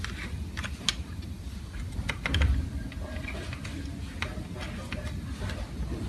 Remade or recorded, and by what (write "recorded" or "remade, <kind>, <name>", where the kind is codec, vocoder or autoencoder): recorded